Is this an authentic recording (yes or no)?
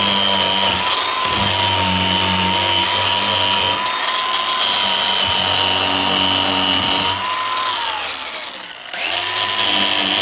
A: yes